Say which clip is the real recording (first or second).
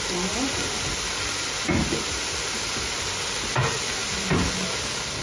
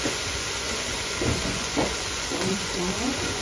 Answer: first